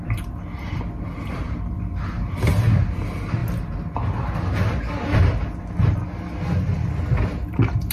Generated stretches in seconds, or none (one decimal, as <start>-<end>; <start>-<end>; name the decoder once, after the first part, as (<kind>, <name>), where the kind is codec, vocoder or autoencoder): none